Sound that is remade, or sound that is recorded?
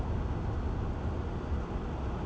recorded